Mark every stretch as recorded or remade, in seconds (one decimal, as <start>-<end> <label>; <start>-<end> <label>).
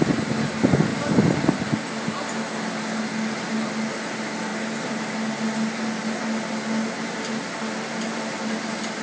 0.0-9.0 recorded